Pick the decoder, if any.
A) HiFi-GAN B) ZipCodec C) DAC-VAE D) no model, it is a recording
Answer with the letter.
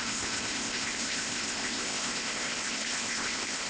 B